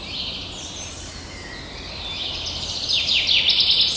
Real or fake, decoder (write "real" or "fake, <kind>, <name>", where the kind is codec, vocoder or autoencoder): real